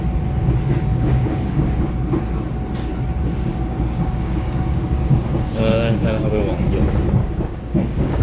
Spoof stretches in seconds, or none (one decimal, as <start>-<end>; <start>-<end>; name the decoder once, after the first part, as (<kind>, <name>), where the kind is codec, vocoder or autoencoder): 0.9-1.9 (codec, DAC); 3.5-6.4; 7.2-8.2